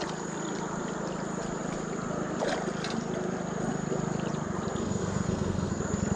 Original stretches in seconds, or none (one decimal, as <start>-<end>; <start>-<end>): 0.0-4.8; 5.8-6.2